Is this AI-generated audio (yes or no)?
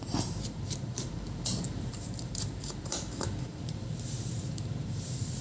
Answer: yes